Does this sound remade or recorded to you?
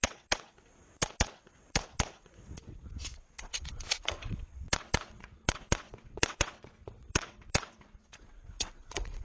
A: remade